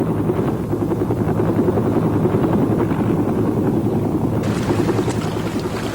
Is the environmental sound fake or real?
real